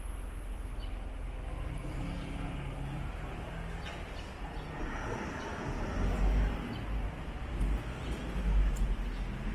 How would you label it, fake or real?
real